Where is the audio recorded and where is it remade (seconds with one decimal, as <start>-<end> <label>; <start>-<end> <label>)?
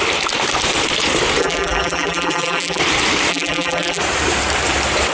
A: 0.0-1.4 recorded; 1.4-2.8 remade; 2.8-3.3 recorded; 3.3-4.0 remade; 4.0-5.1 recorded